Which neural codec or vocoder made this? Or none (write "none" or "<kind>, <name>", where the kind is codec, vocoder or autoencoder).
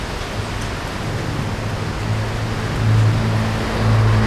none